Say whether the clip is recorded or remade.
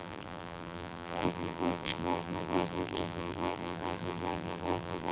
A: remade